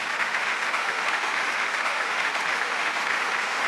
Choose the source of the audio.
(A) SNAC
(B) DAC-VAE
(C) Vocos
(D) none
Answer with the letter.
B